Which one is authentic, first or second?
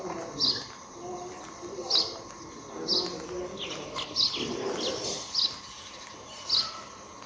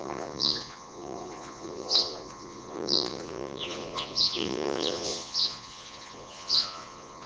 first